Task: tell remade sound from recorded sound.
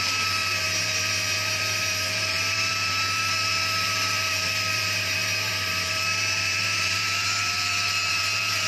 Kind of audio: remade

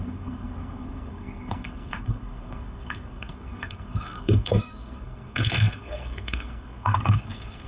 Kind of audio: remade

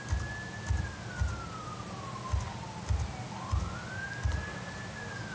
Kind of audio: recorded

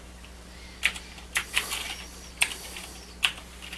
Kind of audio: recorded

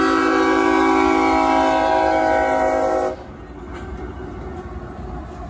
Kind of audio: recorded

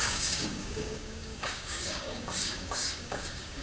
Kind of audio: remade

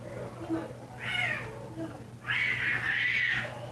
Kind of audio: recorded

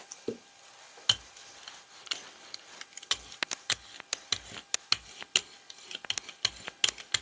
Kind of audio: recorded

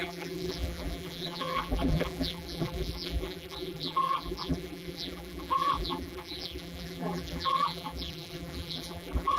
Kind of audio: remade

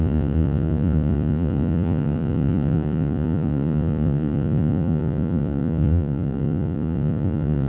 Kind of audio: remade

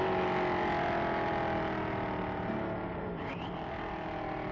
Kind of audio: recorded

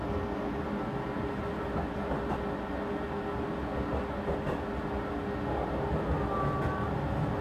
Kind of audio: recorded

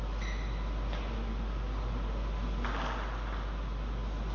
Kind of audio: recorded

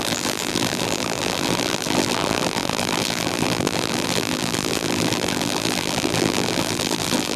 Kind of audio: remade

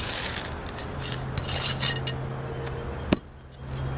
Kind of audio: recorded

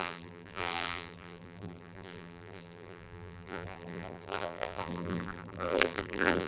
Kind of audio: remade